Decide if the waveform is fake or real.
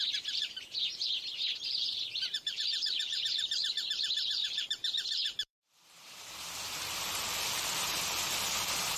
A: fake